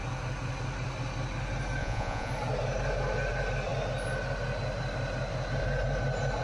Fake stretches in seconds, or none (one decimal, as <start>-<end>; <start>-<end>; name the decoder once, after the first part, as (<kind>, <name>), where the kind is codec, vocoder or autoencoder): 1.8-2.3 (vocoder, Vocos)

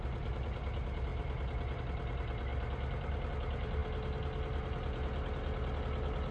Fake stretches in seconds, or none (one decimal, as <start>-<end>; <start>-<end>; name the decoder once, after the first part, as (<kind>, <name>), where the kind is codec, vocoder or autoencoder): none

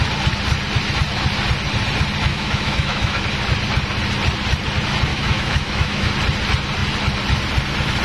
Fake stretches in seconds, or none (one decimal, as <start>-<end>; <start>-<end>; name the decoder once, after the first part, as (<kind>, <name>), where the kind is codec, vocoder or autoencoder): 2.3-3.2 (autoencoder, DAC-VAE); 5.1-6.1

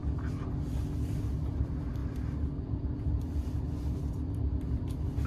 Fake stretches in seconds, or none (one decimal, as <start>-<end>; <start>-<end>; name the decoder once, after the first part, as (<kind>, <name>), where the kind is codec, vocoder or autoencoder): 1.6-5.3 (vocoder, BigVGAN v2)